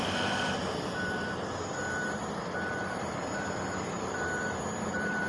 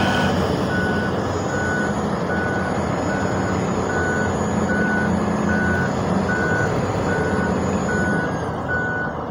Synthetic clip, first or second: first